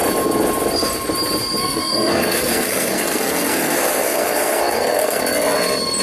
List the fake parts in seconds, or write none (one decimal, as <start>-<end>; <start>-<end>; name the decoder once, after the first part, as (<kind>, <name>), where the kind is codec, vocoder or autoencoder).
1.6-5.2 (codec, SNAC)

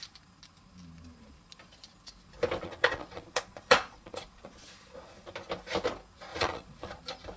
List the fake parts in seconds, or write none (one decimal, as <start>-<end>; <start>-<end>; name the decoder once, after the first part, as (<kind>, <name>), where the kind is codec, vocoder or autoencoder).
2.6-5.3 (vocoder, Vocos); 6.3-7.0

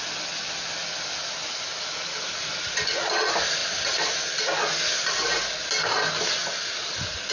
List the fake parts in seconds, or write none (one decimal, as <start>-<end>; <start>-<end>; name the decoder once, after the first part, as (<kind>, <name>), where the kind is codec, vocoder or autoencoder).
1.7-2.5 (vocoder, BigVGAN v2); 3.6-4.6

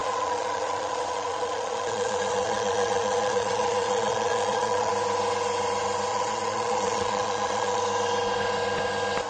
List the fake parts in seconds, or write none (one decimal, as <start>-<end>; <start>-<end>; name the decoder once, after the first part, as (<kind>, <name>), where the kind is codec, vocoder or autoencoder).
0.0-4.9 (vocoder, Vocos); 6.1-7.8

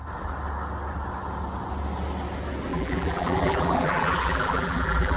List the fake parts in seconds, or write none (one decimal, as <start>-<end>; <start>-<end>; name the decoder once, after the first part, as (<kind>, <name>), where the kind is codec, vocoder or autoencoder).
2.7-5.2 (vocoder, BigVGAN v2)

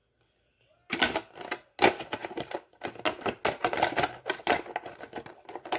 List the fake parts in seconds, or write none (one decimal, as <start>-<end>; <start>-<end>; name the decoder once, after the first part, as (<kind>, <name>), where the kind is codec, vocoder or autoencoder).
none